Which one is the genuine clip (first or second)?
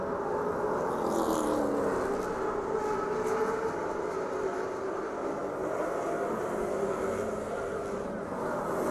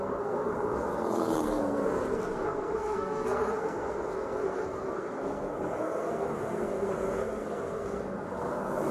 first